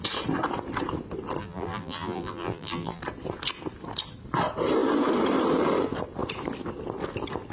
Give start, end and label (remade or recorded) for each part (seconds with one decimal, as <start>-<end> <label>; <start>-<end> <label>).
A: 0.0-1.4 recorded; 1.4-3.0 remade; 3.0-7.5 recorded